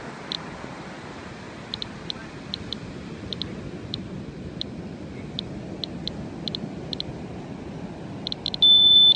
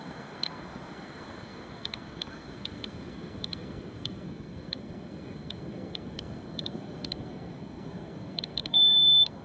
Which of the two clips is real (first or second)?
first